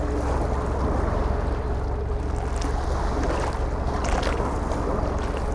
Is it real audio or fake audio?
real